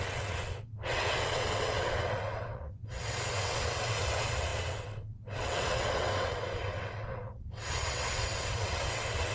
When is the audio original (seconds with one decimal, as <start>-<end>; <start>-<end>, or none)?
none